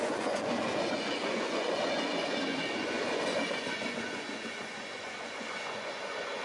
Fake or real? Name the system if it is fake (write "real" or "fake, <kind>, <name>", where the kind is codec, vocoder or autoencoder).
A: fake, vocoder, Vocos